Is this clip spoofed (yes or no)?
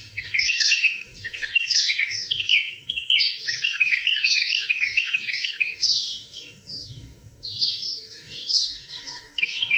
yes